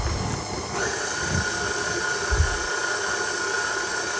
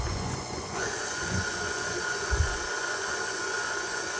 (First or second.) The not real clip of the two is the second